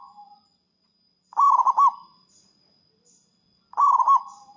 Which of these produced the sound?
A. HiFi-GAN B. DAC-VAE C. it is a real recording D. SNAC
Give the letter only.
C